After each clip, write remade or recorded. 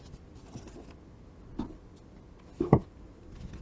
recorded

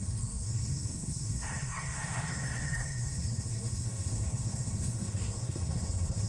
remade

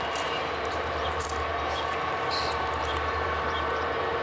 remade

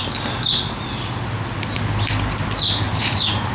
recorded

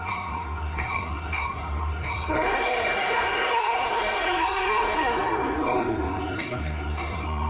remade